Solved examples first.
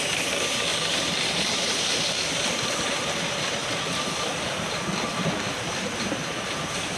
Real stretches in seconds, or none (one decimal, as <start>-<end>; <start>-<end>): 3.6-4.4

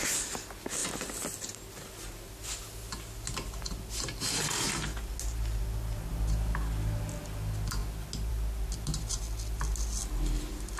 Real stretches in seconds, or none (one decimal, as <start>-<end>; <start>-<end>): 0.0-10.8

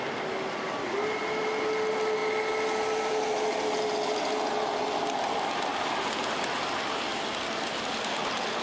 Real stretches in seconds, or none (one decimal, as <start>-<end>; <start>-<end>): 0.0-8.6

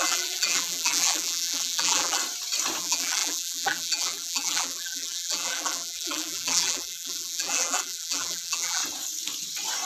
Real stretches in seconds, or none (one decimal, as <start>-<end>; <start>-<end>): 2.2-2.8; 8.8-9.9

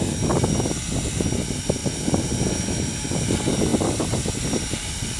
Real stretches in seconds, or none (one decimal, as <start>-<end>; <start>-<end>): 0.0-1.8; 2.3-3.7; 4.8-5.2